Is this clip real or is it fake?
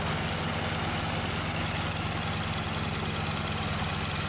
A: real